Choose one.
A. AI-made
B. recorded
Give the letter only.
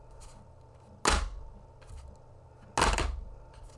B